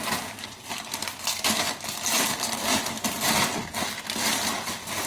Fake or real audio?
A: real